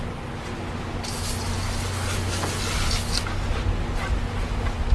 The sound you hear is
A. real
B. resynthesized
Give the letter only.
A